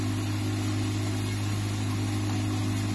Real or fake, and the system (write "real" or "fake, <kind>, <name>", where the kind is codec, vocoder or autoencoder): real